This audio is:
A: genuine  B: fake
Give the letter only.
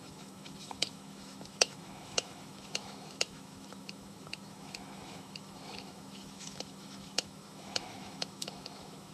B